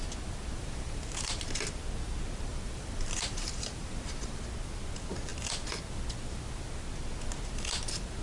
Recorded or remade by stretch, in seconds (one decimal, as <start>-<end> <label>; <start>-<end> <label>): 0.0-0.6 recorded; 0.6-1.4 remade; 1.4-2.5 recorded; 2.5-4.4 remade; 4.4-8.2 recorded